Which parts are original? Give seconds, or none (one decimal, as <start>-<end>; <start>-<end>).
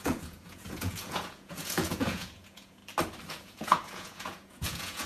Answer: 2.8-3.3